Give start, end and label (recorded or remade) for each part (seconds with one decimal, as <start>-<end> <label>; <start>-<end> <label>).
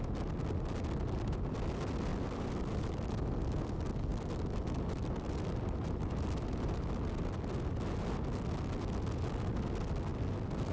0.0-2.1 recorded; 2.1-3.1 remade; 3.1-4.1 recorded; 4.1-6.9 remade; 6.9-10.1 recorded; 10.1-10.7 remade